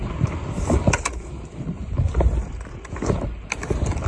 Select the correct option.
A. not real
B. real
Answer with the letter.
B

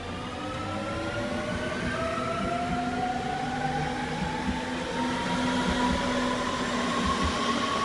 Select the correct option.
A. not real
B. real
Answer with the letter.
B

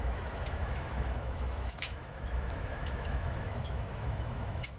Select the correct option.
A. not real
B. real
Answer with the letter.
A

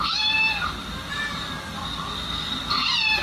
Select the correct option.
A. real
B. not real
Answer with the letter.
A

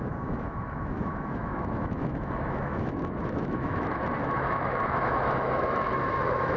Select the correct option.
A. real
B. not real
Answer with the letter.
B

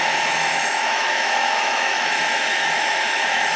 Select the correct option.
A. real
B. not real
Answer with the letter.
B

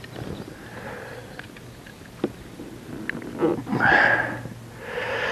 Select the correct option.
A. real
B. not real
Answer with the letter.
A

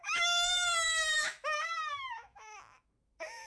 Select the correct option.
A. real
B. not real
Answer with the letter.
B